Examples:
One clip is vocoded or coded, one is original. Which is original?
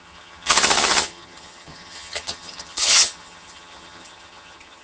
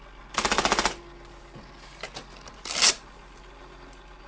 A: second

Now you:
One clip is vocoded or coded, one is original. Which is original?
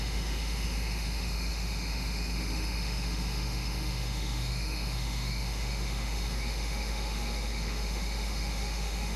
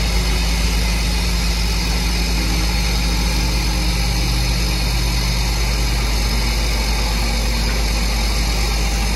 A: second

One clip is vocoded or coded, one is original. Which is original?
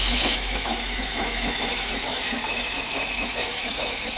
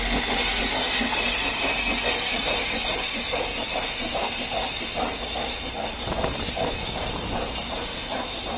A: second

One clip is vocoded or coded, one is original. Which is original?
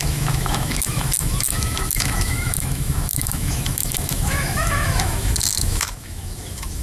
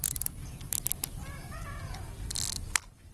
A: second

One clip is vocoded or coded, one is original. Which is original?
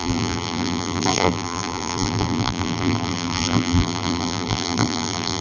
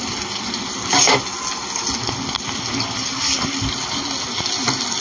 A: second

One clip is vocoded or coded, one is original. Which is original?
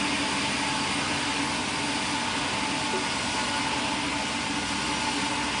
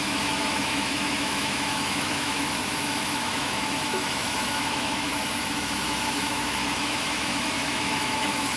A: first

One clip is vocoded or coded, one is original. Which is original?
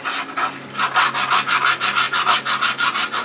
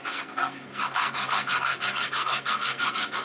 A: first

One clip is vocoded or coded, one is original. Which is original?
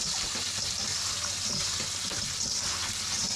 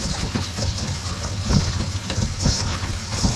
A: first